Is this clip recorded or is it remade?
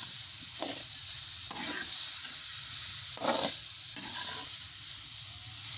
recorded